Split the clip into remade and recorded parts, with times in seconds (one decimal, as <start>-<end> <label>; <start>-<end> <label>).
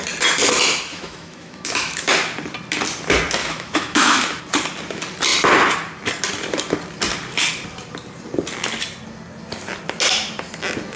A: 0.0-0.9 recorded; 0.9-2.1 remade; 2.1-3.4 recorded; 3.4-4.4 remade; 4.4-11.0 recorded